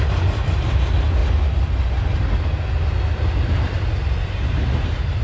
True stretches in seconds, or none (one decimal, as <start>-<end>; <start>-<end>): 1.2-4.2